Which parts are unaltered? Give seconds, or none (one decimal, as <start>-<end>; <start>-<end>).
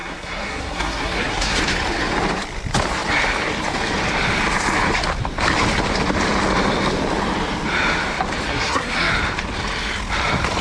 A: 1.6-8.5; 9.1-10.6